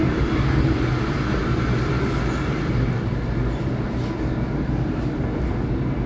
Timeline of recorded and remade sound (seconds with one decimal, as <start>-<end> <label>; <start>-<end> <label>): 0.0-6.1 recorded